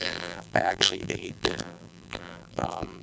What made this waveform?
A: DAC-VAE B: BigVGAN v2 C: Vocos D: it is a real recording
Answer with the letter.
B